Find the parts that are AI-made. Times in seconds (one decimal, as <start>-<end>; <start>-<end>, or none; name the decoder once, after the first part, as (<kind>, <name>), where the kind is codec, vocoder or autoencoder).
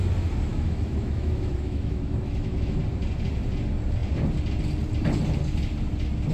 0.5-2.8 (autoencoder, DAC-VAE)